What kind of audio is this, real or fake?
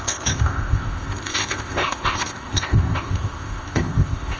fake